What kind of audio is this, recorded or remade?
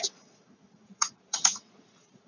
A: remade